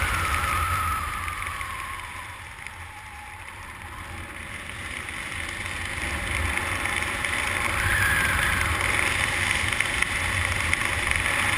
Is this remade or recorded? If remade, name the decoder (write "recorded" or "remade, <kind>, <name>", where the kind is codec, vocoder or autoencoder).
recorded